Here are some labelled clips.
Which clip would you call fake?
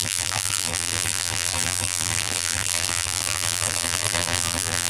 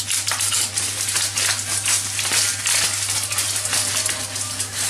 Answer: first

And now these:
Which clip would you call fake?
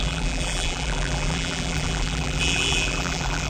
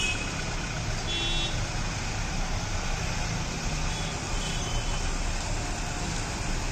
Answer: first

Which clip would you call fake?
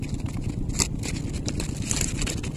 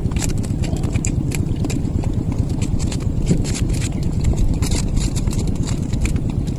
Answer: second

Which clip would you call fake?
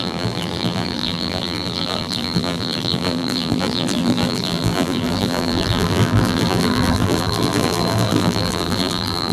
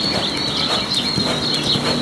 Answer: first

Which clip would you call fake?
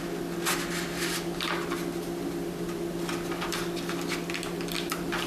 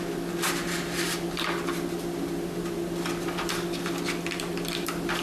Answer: second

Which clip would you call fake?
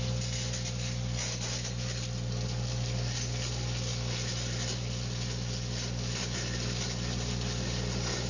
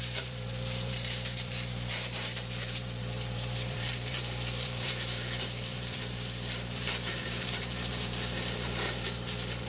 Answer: second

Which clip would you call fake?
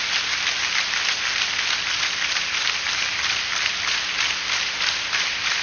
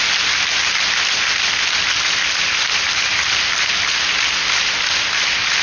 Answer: first